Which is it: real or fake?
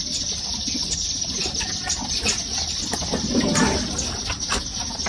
real